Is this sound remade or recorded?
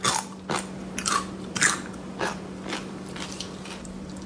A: remade